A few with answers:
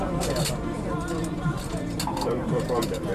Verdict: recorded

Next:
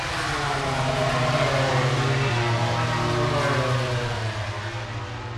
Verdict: recorded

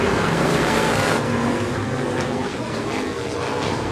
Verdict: remade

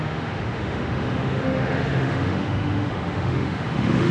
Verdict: remade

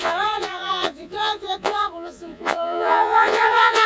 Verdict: remade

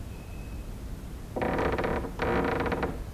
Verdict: recorded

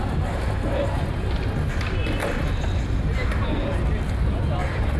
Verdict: recorded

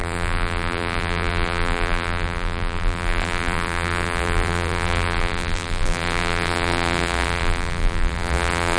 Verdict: remade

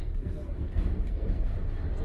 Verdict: remade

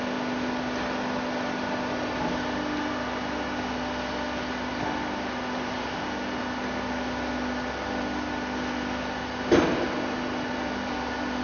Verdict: recorded